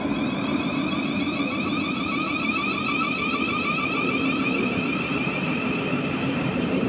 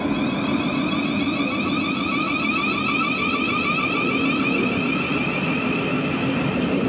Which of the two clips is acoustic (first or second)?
second